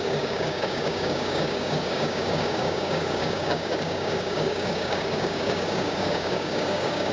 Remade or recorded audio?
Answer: remade